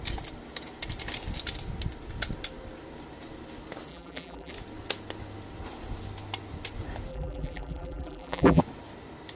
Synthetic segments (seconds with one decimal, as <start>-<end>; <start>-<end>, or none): 3.9-4.5; 7.1-8.6